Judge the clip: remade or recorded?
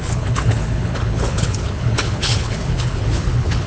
remade